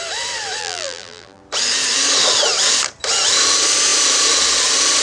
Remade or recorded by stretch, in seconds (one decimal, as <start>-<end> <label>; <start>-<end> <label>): 0.0-0.6 recorded; 0.6-1.4 remade; 1.4-5.0 recorded